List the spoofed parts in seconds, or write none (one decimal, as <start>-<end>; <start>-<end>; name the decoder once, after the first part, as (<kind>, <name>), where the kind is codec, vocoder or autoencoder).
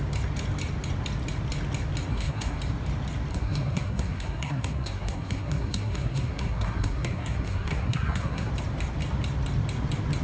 2.1-2.6 (codec, SNAC); 3.3-8.5